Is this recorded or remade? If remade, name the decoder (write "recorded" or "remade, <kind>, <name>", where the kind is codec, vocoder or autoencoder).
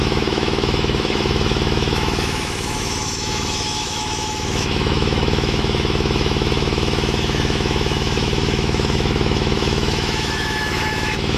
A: remade, autoencoder, DAC-VAE